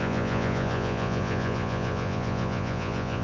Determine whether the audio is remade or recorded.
remade